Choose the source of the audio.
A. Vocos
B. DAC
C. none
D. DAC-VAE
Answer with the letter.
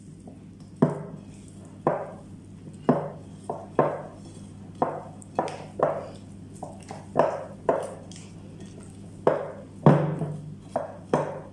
C